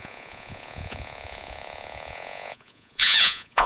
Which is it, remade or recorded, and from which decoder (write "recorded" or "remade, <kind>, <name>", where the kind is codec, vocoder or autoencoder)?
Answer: remade, vocoder, Vocos